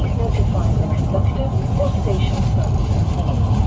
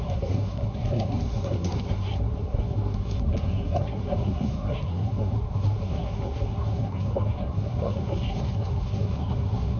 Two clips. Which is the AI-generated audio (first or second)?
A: second